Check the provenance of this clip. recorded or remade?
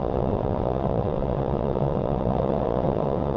remade